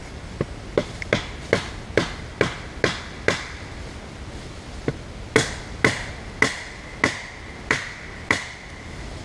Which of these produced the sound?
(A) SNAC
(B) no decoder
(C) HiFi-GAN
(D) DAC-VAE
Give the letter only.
B